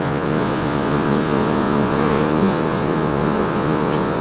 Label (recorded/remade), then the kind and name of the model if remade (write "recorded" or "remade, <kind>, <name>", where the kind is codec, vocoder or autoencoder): remade, vocoder, Vocos